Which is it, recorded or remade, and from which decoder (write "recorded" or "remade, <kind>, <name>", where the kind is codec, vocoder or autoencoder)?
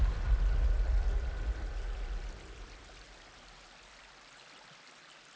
recorded